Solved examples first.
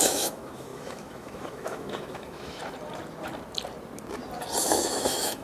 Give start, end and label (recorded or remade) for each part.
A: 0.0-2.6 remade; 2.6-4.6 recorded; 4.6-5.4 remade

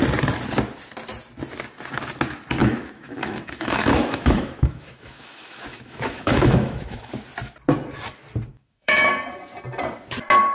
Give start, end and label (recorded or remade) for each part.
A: 0.0-2.6 recorded; 2.6-7.1 remade; 7.1-8.5 recorded; 8.5-9.1 remade; 9.1-10.5 recorded